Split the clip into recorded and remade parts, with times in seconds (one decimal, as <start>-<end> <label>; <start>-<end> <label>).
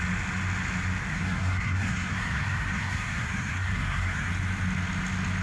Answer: 0.0-1.1 recorded; 1.1-4.3 remade; 4.3-5.4 recorded